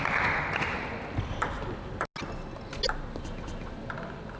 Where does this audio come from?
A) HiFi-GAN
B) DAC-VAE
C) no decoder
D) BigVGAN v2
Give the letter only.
C